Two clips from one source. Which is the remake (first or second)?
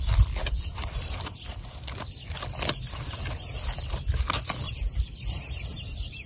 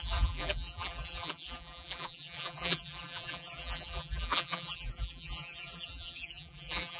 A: second